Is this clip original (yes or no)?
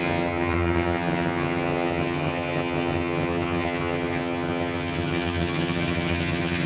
no